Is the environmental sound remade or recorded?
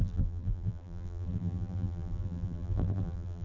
remade